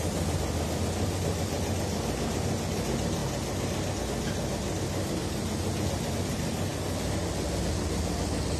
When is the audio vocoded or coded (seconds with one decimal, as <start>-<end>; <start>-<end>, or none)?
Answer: 6.7-7.2